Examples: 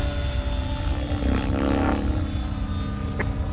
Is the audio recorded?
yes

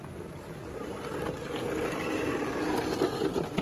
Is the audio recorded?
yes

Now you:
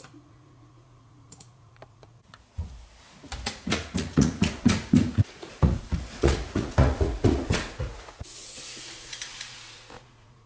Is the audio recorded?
no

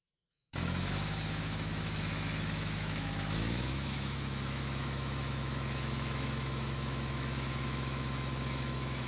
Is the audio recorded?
no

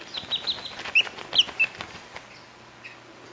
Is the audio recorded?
yes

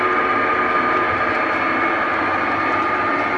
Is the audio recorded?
yes